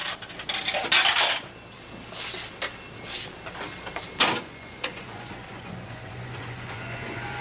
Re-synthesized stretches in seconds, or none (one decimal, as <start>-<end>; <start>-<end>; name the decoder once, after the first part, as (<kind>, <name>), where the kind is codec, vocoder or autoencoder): 4.4-7.4 (vocoder, Vocos)